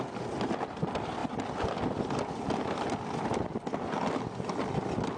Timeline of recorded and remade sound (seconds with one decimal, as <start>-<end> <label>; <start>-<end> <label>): 0.0-5.2 recorded